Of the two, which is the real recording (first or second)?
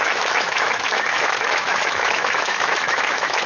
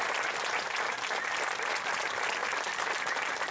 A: second